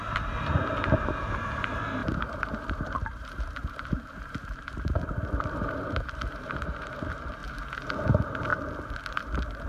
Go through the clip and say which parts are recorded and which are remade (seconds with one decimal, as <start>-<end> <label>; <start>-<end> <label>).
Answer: 0.0-7.4 remade; 7.4-8.1 recorded; 8.1-8.5 remade; 8.5-9.1 recorded; 9.1-9.7 remade